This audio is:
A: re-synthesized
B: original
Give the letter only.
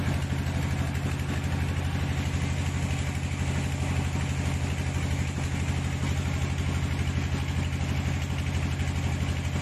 B